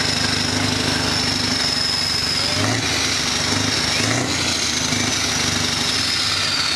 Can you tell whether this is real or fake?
real